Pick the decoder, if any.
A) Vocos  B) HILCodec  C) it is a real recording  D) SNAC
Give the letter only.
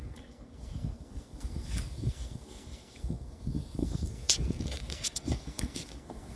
D